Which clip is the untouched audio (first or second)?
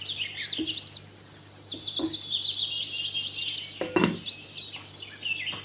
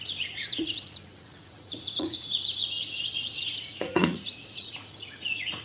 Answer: first